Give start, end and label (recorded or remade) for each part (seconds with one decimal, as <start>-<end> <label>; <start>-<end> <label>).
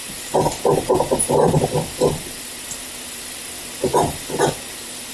0.0-5.1 remade